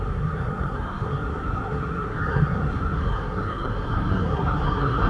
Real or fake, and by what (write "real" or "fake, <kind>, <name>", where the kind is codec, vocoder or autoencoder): fake, codec, SNAC